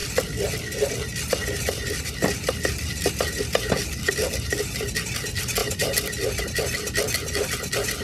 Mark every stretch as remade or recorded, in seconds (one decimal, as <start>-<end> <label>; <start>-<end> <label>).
0.0-5.6 recorded; 5.6-6.4 remade; 6.4-8.0 recorded